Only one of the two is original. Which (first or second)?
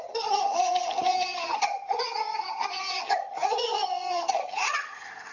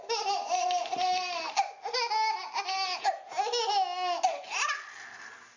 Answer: second